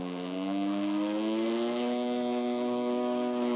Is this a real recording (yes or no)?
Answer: no